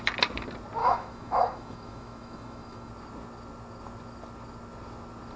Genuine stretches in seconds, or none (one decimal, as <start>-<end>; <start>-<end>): 0.0-0.8; 2.9-5.4